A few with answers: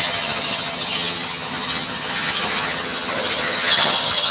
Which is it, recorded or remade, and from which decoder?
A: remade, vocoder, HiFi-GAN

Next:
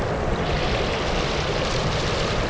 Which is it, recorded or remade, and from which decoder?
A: recorded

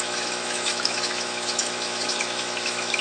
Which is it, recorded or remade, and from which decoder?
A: remade, autoencoder, DAC-VAE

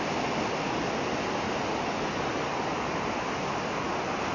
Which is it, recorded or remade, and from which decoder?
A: recorded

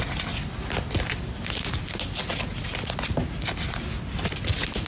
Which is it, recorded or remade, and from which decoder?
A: recorded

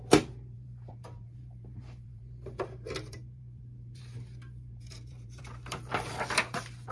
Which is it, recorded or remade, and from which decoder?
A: remade, vocoder, BigVGAN v2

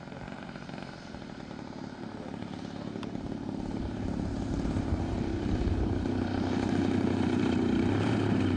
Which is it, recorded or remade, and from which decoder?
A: remade, vocoder, BigVGAN v2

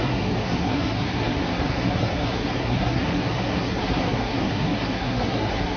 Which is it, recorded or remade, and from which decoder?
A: remade, codec, SNAC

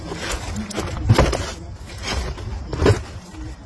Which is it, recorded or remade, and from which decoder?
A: recorded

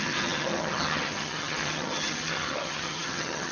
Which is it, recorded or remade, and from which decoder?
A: remade, vocoder, HiFi-GAN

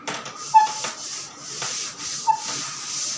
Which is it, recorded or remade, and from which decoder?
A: recorded